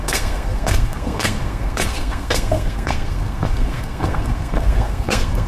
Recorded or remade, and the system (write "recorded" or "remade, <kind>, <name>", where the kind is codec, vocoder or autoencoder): remade, codec, SNAC